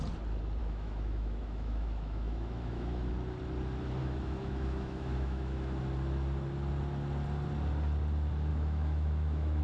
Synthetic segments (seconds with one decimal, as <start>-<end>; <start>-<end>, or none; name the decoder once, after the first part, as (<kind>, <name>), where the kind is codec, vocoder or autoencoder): 0.6-3.1 (autoencoder, DAC-VAE); 4.0-5.8; 8.5-9.6